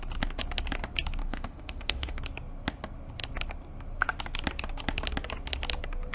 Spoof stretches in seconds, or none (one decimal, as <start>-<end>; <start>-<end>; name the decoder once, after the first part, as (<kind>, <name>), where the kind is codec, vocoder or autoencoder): 1.2-2.2 (autoencoder, DAC-VAE)